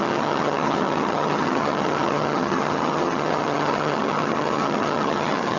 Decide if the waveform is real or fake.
fake